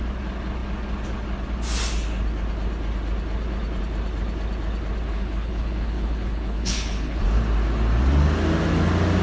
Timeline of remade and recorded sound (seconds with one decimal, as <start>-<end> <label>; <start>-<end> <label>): 0.0-5.1 recorded; 5.1-7.2 remade; 7.2-9.2 recorded